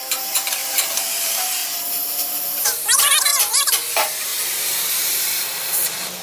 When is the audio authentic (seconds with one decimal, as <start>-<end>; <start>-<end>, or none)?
1.6-2.6; 3.3-3.9